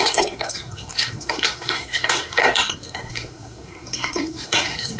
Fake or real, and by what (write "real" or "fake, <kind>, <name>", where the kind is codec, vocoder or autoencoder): fake, codec, SNAC